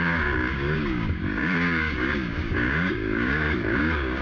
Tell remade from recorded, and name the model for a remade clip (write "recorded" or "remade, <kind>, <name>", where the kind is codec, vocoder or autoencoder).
remade, codec, DAC